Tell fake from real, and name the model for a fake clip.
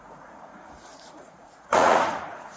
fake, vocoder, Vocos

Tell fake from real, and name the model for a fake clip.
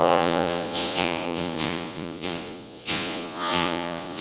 fake, vocoder, Vocos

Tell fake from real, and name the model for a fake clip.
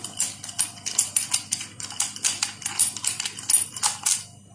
real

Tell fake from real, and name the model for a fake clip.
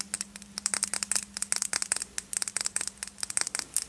real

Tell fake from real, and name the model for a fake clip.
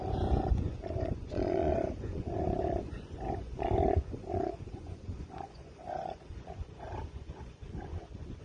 fake, vocoder, Vocos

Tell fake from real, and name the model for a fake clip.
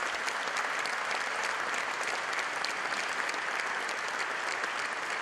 real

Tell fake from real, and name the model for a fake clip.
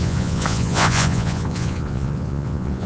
fake, vocoder, Vocos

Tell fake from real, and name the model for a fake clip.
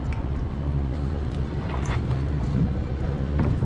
fake, vocoder, Vocos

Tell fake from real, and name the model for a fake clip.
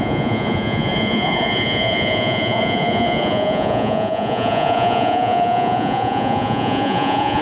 fake, vocoder, Vocos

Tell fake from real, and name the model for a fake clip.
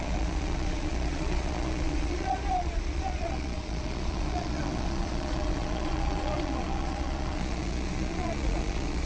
fake, vocoder, Vocos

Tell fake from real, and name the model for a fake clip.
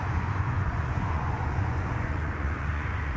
fake, vocoder, Vocos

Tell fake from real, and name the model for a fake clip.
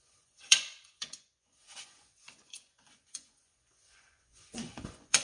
fake, vocoder, Vocos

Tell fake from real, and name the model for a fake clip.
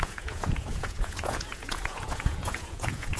fake, vocoder, Vocos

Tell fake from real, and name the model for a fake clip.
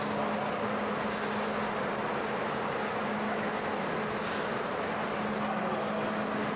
real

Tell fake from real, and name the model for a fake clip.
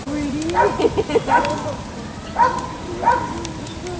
real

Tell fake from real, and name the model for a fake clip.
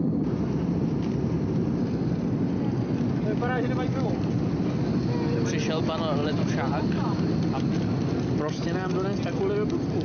real